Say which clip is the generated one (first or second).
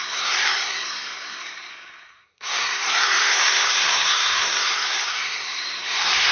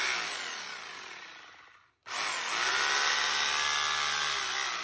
first